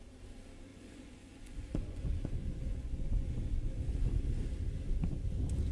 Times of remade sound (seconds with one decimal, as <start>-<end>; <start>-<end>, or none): 0.7-4.1